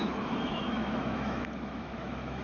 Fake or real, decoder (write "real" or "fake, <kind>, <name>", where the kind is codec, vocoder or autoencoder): fake, autoencoder, DAC-VAE